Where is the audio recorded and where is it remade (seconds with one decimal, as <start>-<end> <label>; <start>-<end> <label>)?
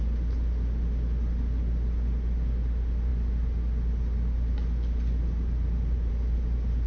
0.0-6.9 recorded